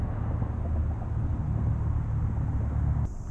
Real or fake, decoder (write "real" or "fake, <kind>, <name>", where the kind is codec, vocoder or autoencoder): real